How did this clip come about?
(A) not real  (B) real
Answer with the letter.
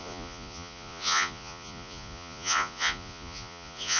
A